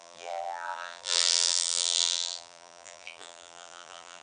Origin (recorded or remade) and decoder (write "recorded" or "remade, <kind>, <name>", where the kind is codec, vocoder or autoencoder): remade, vocoder, BigVGAN v2